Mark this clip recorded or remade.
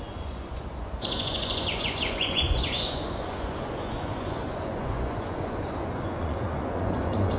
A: remade